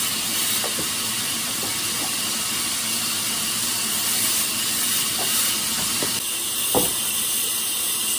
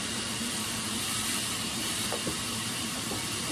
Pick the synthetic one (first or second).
second